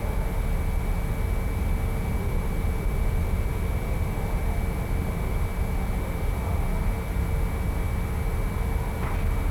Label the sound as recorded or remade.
recorded